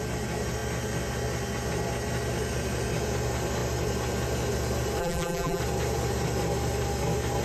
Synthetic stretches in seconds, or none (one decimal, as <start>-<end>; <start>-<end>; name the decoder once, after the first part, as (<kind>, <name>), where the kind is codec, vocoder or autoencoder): 5.0-5.6 (vocoder, BigVGAN v2)